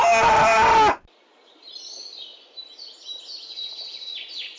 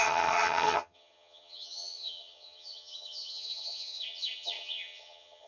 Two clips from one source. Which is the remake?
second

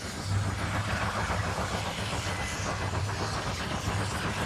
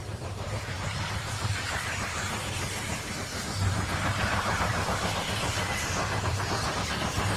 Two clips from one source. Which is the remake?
second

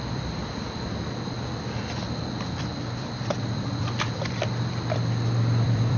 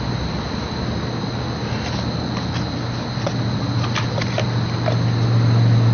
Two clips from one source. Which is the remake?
first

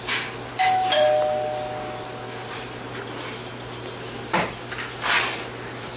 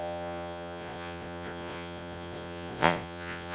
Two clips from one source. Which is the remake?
second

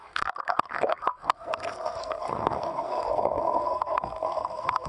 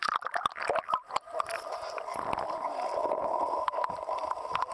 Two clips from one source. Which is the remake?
first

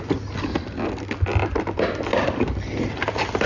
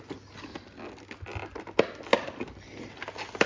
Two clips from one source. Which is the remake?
first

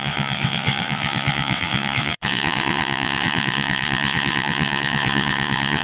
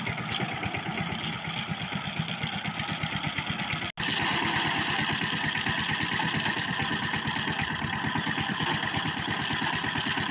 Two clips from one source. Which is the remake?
first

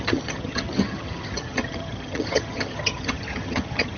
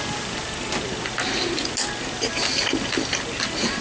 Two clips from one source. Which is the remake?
first